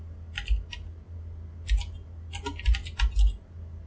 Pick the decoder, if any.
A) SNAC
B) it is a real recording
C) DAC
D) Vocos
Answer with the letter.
B